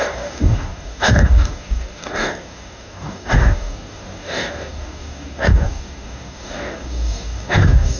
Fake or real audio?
fake